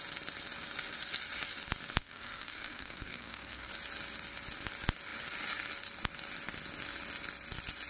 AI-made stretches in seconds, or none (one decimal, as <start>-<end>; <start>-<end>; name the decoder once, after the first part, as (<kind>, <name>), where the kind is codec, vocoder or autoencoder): 2.0-3.7 (codec, SNAC)